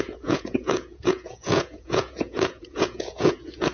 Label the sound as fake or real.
fake